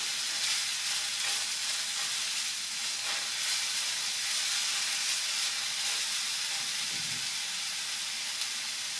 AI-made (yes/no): no